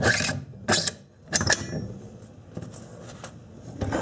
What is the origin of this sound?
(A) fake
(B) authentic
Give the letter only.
B